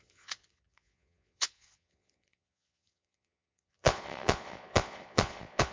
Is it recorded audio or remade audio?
remade